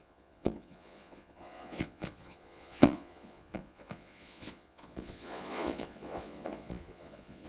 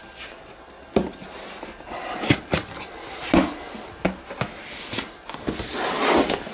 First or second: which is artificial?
first